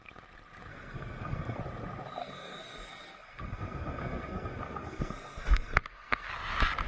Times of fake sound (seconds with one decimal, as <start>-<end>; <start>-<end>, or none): 0.7-1.6; 2.2-6.3